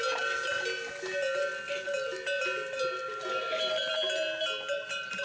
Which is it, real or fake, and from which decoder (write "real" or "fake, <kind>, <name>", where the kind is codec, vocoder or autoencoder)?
real